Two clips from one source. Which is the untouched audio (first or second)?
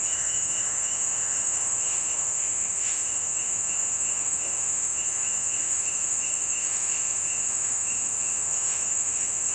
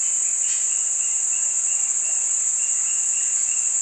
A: second